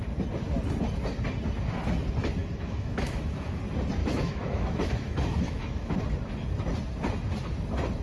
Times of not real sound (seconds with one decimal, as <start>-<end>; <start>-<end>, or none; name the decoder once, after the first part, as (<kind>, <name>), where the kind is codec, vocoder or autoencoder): 2.4-3.6 (autoencoder, DAC-VAE); 4.0-6.0